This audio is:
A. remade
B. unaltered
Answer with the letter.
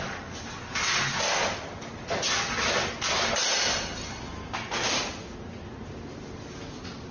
B